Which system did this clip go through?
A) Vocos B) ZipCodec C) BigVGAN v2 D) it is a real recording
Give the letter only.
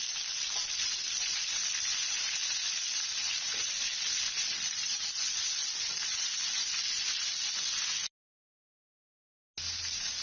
D